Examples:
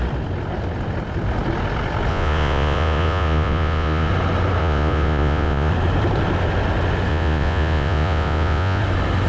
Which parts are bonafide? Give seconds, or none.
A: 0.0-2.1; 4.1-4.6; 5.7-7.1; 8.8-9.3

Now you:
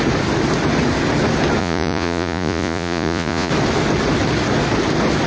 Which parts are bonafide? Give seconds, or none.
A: 0.0-1.6; 3.5-5.3